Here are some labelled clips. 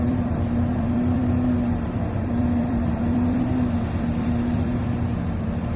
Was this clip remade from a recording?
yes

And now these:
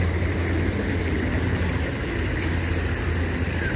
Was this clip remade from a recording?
no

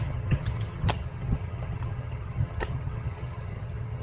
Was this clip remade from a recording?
yes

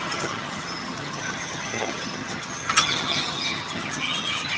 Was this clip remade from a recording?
yes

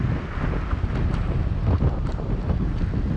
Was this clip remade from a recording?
no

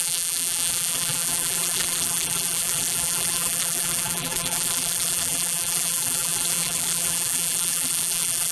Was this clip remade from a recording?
yes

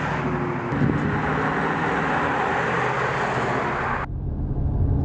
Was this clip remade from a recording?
no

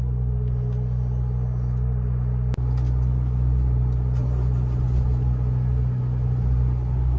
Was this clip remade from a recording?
no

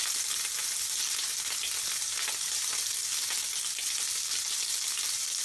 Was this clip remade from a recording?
no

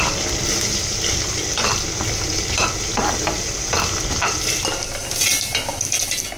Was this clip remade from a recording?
no